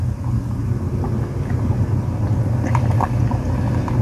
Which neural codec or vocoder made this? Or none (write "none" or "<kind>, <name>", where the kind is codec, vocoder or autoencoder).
none